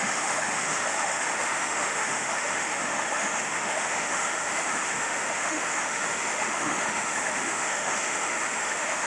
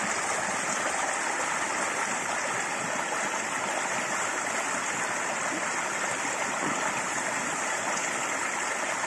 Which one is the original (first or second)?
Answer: second